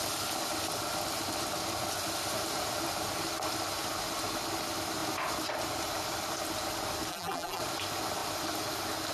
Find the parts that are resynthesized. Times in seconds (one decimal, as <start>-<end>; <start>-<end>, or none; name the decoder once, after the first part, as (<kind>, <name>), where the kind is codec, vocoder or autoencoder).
7.1-7.6 (vocoder, BigVGAN v2)